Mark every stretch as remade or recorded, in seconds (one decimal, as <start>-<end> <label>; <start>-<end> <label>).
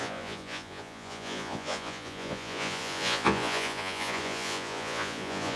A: 0.0-5.6 remade